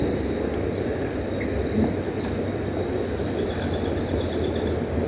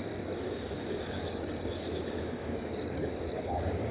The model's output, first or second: second